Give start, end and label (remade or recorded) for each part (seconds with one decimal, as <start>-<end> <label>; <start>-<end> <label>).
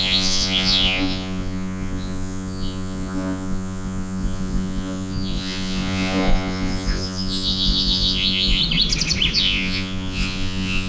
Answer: 0.0-8.6 remade; 8.6-9.4 recorded; 9.4-10.9 remade